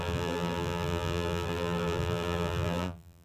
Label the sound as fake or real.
fake